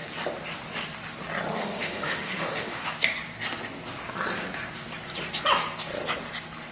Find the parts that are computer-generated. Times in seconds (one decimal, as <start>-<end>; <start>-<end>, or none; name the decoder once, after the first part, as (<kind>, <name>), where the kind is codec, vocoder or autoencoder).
1.6-2.9 (autoencoder, DAC-VAE)